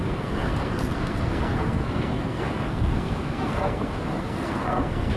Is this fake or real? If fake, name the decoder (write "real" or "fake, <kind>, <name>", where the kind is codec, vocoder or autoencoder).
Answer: fake, codec, SNAC